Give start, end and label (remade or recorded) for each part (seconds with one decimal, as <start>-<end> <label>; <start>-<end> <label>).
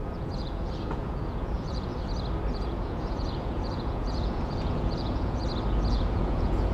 0.0-1.9 remade; 1.9-2.5 recorded; 2.5-5.4 remade; 5.4-5.9 recorded; 5.9-6.7 remade